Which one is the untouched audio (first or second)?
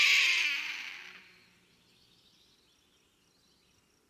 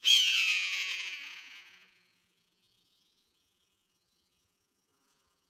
first